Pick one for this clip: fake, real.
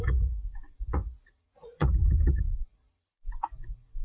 fake